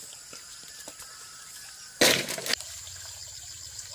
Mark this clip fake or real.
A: real